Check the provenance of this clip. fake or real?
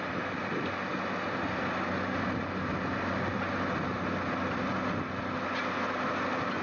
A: real